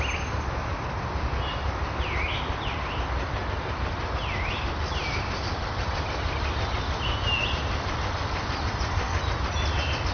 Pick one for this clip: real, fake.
real